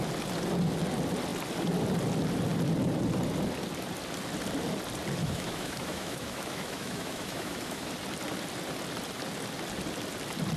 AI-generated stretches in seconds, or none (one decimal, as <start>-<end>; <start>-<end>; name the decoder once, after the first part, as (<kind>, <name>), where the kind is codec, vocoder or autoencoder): 5.2-7.9 (autoencoder, DAC-VAE)